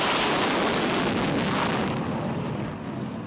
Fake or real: real